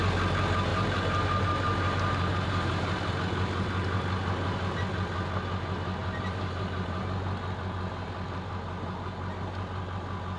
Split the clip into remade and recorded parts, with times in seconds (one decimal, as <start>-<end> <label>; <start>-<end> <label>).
0.0-0.7 recorded; 0.7-3.1 remade; 3.1-6.0 recorded; 6.0-7.0 remade; 7.0-10.4 recorded